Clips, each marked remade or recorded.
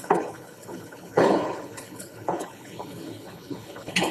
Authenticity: remade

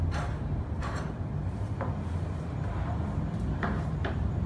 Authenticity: remade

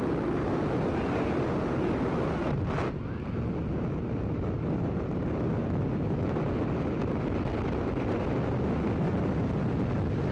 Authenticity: recorded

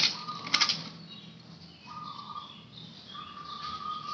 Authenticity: recorded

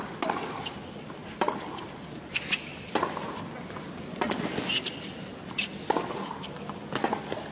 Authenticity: recorded